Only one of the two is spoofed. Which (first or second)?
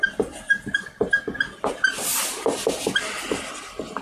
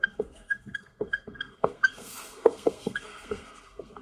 second